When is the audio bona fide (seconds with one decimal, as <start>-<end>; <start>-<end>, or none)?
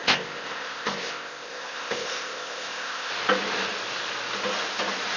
3.1-5.2